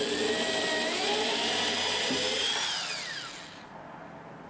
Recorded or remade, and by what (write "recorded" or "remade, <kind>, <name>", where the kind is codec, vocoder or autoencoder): recorded